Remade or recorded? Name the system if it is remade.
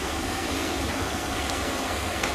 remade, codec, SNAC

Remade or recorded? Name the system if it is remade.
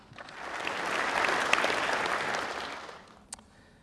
recorded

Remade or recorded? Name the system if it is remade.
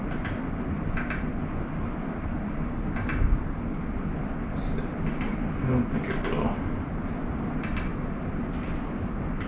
recorded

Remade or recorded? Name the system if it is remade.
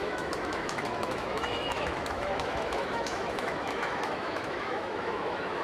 remade, autoencoder, DAC-VAE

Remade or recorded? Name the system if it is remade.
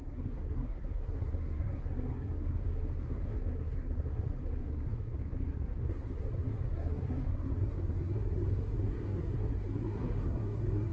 remade, codec, SNAC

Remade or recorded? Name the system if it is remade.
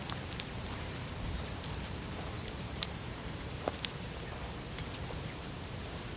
remade, vocoder, BigVGAN v2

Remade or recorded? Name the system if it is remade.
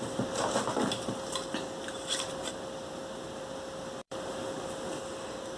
remade, vocoder, BigVGAN v2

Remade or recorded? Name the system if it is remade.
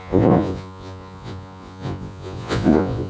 remade, vocoder, Vocos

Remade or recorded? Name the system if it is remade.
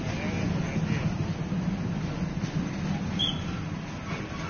recorded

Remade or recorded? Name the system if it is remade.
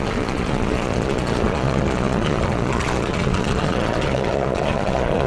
remade, vocoder, Vocos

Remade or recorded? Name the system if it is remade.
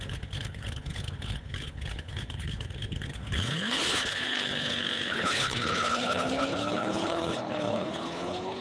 remade, codec, HILCodec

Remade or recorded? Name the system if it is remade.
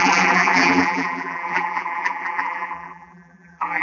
remade, vocoder, BigVGAN v2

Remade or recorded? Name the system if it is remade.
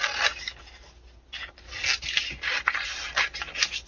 recorded